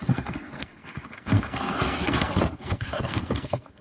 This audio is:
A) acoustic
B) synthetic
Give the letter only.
B